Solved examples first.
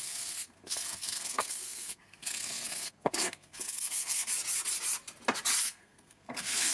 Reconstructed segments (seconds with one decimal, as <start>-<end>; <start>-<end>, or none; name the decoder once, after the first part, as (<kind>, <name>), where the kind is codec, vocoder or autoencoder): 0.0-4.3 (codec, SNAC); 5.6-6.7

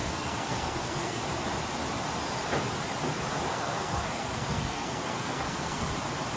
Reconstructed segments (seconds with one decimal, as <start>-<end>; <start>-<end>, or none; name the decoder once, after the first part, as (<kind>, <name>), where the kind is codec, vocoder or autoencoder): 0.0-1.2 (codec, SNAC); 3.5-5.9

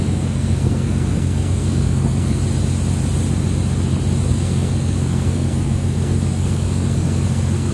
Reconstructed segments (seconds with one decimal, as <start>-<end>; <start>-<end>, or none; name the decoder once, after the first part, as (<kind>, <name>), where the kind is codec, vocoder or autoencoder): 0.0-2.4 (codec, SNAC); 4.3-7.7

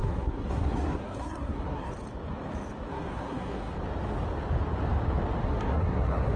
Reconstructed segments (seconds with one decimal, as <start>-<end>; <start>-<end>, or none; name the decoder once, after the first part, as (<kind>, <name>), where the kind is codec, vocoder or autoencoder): 0.0-1.9 (codec, SNAC); 2.9-3.8; 5.4-6.4